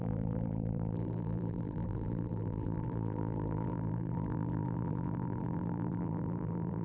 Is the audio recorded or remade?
remade